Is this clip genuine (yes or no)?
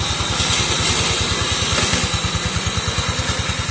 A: yes